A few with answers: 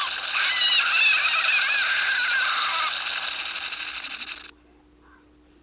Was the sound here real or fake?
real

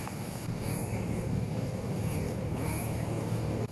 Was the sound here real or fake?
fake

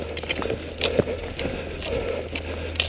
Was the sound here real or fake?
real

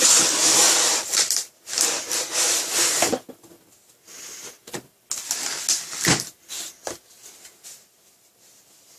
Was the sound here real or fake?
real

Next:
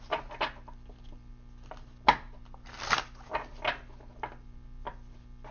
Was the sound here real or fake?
real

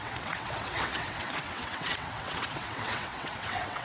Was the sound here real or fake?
fake